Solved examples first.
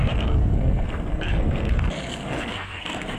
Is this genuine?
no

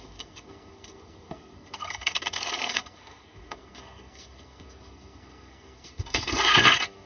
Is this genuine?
no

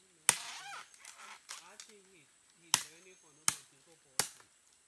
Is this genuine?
yes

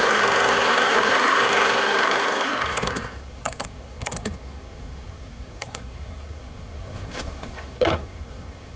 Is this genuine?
no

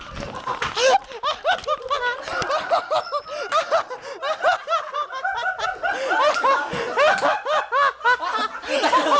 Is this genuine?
yes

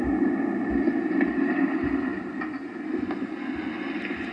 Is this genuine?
yes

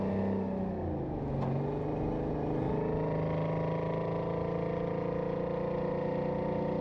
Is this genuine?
yes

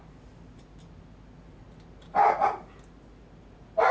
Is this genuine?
yes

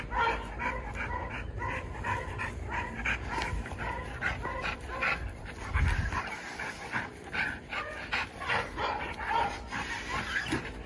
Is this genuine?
yes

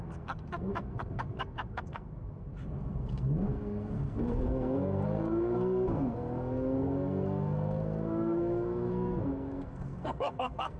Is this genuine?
no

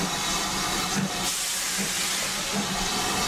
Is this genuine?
yes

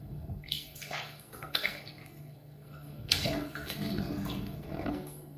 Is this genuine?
no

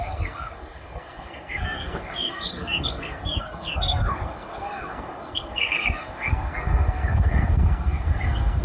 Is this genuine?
no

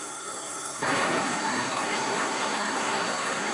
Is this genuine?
no